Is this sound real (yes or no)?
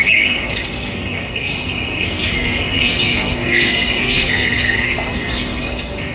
no